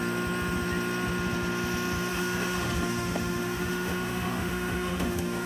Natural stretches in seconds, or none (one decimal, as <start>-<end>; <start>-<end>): 0.0-2.1